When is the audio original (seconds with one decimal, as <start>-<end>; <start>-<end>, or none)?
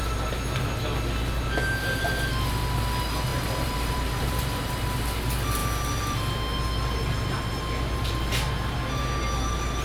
0.0-3.3; 4.7-9.8